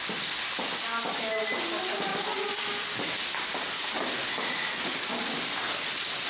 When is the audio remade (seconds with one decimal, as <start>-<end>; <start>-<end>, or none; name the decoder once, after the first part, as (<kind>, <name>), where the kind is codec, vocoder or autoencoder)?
none